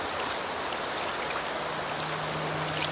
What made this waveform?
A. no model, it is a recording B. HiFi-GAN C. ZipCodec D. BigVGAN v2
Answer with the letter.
A